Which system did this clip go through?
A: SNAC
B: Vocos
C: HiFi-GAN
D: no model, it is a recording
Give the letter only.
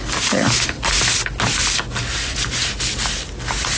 D